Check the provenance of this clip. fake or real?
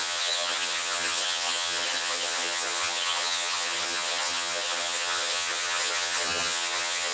fake